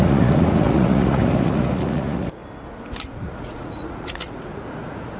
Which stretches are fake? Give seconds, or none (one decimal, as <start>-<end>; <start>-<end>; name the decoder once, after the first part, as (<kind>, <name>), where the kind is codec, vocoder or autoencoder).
0.0-2.4 (vocoder, Vocos); 3.1-5.2